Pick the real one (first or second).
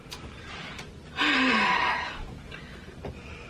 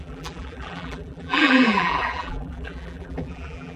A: first